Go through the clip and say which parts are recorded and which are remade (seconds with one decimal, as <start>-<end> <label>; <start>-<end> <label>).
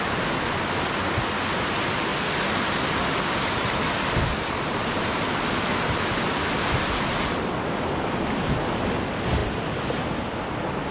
0.0-10.9 recorded